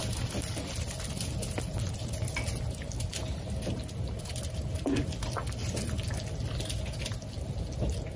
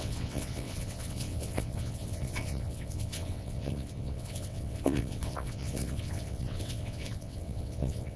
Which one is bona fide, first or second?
first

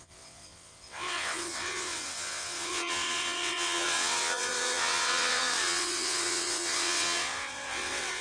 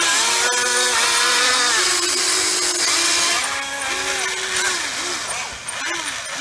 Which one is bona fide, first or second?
second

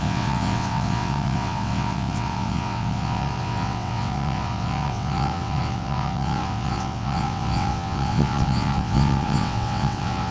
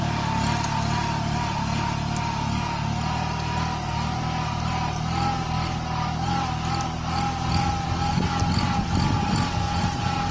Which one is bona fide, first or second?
second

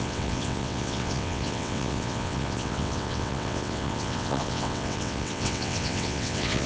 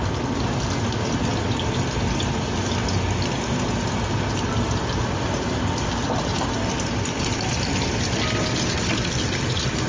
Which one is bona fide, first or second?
second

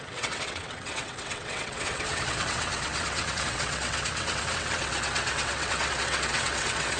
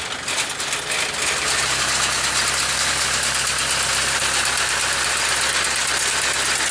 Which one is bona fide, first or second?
second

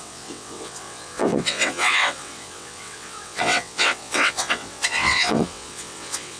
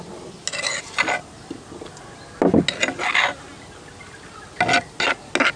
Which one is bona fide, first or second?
second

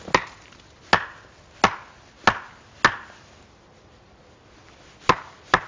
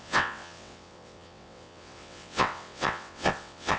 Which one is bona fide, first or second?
first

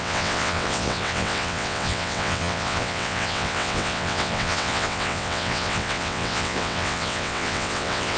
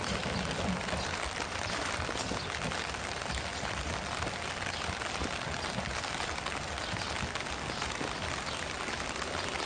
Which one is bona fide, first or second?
second